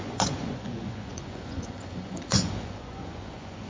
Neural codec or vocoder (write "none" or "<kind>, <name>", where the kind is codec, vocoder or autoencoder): vocoder, Vocos